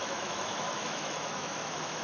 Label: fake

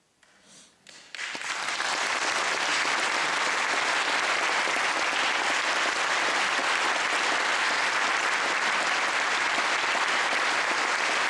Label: real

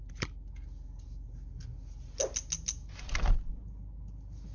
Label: real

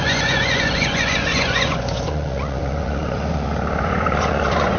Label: fake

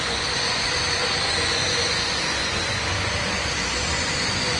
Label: fake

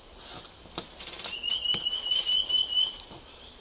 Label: real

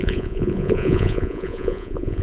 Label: fake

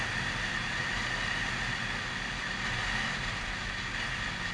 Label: real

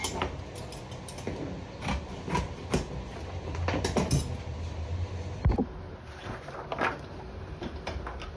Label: real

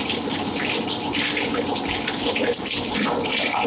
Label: real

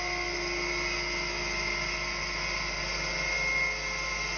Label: real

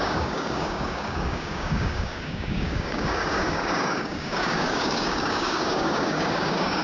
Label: fake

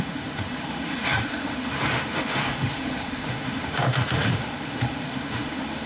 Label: fake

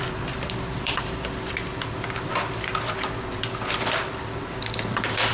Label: fake